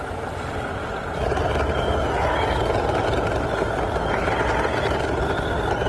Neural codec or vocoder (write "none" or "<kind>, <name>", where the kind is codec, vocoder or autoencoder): none